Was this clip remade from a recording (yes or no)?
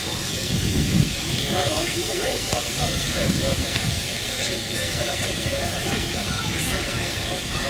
yes